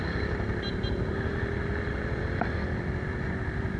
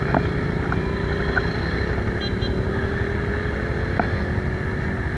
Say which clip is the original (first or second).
second